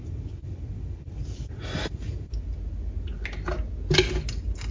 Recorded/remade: recorded